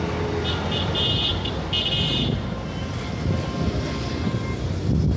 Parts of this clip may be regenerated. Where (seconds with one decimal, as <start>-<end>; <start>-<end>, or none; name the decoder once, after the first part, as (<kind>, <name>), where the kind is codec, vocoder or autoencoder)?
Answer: none